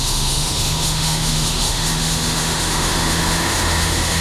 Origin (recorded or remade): remade